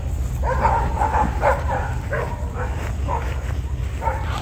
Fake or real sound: real